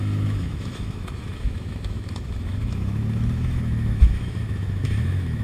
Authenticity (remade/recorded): remade